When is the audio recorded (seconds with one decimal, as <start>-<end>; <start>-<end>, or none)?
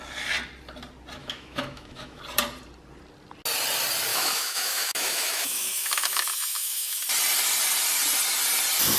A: 0.0-1.2; 2.2-4.1; 7.0-9.0